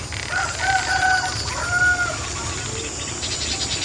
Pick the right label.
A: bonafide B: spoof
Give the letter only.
A